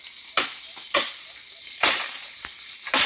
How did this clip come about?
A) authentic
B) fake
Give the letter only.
B